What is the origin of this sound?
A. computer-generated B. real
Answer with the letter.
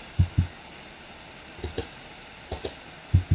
B